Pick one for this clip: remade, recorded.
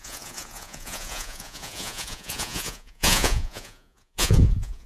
remade